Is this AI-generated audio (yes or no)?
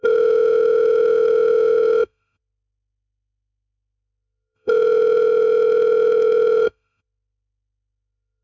yes